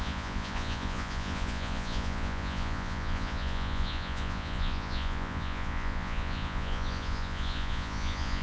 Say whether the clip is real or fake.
fake